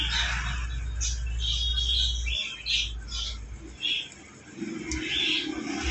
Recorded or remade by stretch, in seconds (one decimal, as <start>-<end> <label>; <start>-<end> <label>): 0.0-5.9 recorded